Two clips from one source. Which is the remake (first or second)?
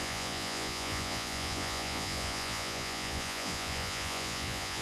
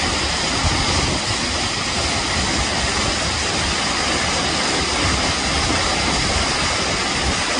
first